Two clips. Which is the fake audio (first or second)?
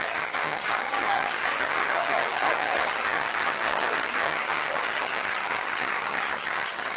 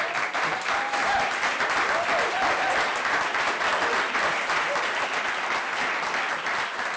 first